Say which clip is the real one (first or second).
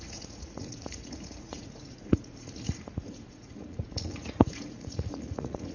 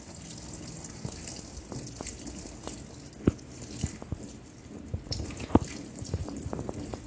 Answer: second